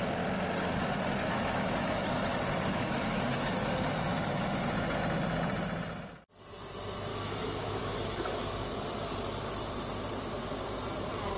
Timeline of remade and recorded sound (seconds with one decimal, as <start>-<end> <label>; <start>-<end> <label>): 0.0-1.2 recorded; 1.2-2.1 remade; 2.1-2.7 recorded; 2.7-3.7 remade; 3.7-7.1 recorded; 7.1-8.4 remade; 8.4-11.4 recorded